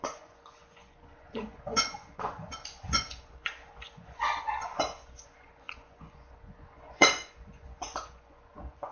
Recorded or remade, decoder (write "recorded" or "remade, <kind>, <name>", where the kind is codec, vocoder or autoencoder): remade, vocoder, Vocos